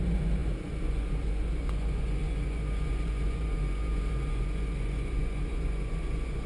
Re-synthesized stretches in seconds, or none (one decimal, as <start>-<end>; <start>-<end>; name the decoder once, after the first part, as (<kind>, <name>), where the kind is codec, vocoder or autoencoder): 0.0-6.5 (vocoder, Vocos)